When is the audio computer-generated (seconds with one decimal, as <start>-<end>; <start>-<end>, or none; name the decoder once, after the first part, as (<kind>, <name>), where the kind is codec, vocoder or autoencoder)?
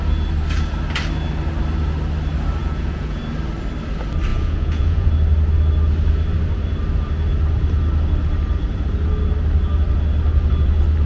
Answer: 2.6-3.2 (vocoder, Vocos); 4.3-5.1